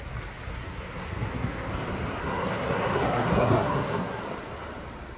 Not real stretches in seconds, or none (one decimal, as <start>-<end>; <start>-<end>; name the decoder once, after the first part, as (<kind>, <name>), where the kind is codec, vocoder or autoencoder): 0.5-1.7 (codec, SNAC); 2.2-4.2